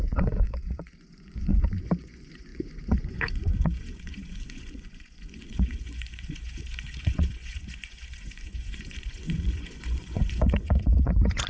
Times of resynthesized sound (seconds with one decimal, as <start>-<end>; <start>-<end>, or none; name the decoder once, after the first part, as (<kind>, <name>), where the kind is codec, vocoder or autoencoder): 0.0-11.5 (vocoder, Vocos)